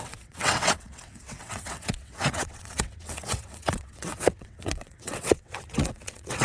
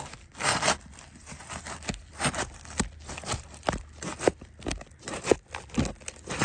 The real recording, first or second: second